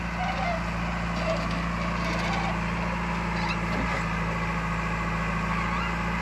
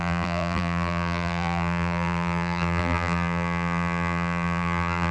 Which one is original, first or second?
first